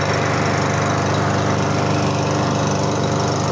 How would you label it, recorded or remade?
recorded